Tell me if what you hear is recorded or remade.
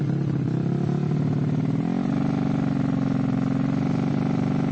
recorded